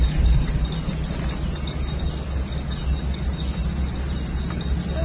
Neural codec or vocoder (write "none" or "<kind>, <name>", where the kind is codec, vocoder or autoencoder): none